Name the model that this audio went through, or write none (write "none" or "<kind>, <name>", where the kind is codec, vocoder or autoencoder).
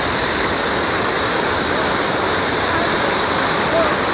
none